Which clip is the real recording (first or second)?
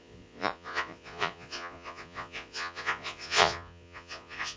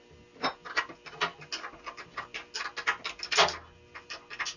second